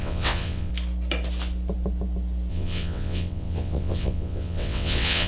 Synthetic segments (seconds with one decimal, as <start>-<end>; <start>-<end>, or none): 0.0-0.7; 2.5-5.3